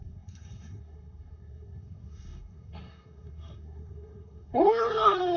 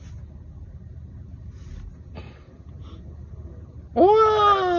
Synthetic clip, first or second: first